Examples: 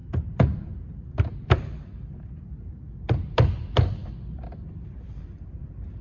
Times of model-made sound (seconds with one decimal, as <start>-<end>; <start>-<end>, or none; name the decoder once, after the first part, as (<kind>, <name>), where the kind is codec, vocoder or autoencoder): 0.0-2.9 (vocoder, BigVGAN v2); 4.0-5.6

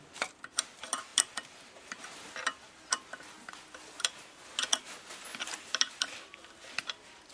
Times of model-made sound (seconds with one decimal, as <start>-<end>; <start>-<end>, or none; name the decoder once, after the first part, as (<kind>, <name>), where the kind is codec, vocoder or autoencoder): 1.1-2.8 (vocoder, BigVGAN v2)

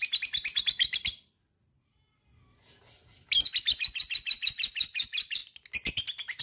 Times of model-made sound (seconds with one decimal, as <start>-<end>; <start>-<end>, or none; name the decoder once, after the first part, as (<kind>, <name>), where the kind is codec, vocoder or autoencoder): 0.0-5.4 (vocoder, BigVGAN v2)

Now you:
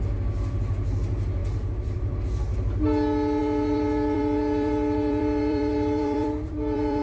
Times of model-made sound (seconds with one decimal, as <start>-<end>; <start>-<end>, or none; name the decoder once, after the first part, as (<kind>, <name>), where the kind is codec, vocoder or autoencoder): 1.4-2.2 (vocoder, BigVGAN v2); 3.4-7.0

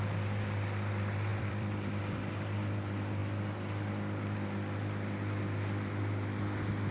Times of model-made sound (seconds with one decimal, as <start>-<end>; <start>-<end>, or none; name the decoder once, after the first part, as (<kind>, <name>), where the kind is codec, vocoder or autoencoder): 1.3-2.0 (vocoder, BigVGAN v2)

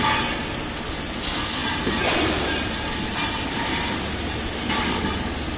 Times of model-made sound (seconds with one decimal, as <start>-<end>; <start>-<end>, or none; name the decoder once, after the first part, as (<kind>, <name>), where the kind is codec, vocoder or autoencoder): 1.6-5.0 (vocoder, BigVGAN v2)

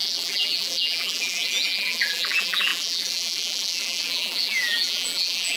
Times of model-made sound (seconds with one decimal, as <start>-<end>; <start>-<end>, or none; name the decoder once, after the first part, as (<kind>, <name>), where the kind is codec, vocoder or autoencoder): 0.0-5.6 (vocoder, BigVGAN v2)